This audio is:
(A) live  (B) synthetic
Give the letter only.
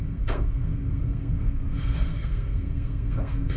B